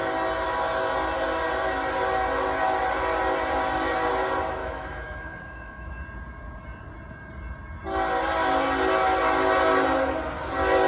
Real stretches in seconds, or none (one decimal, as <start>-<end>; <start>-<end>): 0.0-4.6; 6.0-10.9